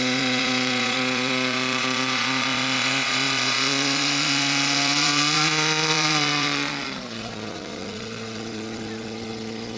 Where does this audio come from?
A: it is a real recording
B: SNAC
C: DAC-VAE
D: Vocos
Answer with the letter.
D